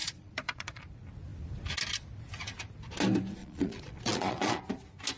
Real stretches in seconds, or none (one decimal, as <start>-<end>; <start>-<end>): 0.8-3.4; 4.6-5.2

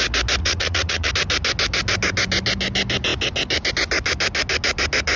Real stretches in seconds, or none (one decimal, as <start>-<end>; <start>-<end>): 0.0-0.4; 1.1-5.2

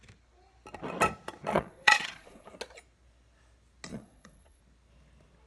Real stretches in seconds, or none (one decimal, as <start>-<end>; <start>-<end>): 0.0-1.5; 2.5-3.9; 4.6-5.5

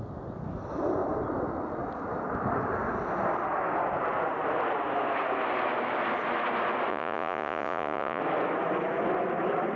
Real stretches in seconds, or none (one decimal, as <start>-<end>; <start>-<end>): 0.0-6.9; 8.2-9.8